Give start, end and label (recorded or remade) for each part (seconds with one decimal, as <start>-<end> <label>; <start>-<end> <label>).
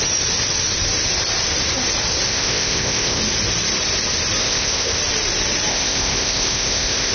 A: 0.0-2.3 recorded; 2.3-3.2 remade; 3.2-4.4 recorded; 4.4-5.0 remade; 5.0-5.7 recorded; 5.7-7.1 remade